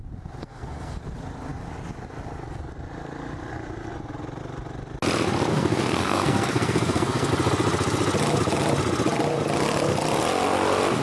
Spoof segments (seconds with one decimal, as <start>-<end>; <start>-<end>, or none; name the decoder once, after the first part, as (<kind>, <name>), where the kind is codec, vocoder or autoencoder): 0.4-1.0 (codec, SNAC); 5.5-7.3